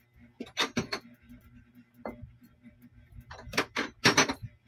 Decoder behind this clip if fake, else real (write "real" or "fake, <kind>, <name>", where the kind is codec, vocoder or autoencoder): real